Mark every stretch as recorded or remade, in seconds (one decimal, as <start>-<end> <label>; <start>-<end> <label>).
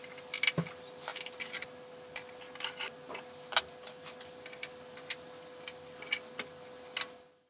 0.0-7.5 recorded